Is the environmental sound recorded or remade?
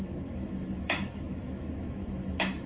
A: remade